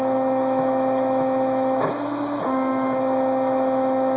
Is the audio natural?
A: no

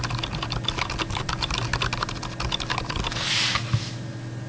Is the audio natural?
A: yes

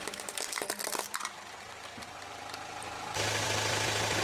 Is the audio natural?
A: no